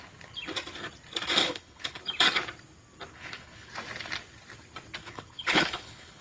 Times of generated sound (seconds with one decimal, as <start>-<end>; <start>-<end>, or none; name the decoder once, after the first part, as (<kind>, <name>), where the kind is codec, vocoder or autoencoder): 1.4-2.0 (codec, HILCodec); 3.1-3.7; 5.0-6.2